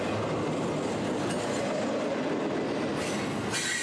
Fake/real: real